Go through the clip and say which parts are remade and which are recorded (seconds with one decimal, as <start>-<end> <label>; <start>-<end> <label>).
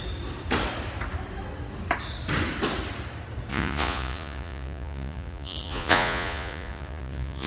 0.0-3.5 recorded; 3.5-7.5 remade